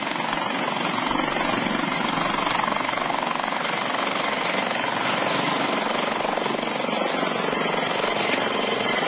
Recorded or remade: recorded